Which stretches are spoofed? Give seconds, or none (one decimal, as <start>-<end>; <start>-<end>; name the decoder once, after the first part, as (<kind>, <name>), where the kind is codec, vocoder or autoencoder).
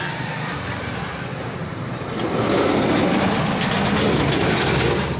none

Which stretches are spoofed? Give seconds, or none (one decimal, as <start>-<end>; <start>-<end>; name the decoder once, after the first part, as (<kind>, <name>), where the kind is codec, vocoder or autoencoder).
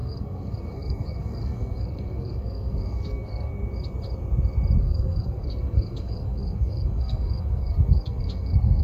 0.0-3.5 (codec, SNAC); 4.8-8.8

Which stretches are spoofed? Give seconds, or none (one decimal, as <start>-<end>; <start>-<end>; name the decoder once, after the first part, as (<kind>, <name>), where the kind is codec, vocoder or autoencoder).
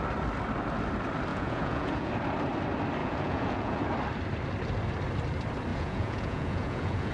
1.3-2.1 (vocoder, Vocos); 3.0-3.8; 5.7-7.1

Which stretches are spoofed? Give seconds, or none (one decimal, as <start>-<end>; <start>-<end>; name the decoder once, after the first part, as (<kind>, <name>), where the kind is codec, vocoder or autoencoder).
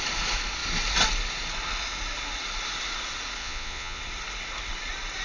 3.4-4.0 (vocoder, Vocos)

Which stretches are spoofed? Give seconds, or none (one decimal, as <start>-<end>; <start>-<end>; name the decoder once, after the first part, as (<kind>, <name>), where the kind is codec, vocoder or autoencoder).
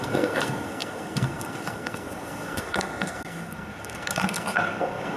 0.0-5.2 (codec, SNAC)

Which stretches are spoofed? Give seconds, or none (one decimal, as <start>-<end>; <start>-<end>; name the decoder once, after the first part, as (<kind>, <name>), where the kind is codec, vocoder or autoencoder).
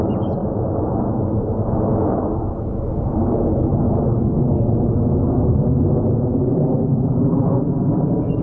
0.4-3.1 (autoencoder, DAC-VAE)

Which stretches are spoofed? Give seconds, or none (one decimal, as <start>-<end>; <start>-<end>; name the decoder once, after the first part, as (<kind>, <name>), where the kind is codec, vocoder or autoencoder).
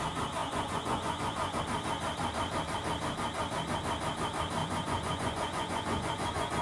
0.4-1.6 (vocoder, Vocos); 4.6-6.6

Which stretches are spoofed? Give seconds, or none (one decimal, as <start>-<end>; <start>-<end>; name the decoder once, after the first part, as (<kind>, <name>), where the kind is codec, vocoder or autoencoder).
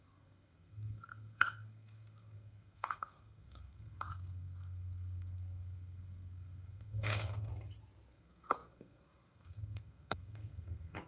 0.0-7.5 (codec, SNAC); 8.1-11.1